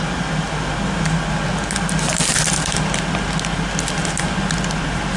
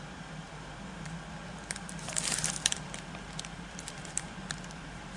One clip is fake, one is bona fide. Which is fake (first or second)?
second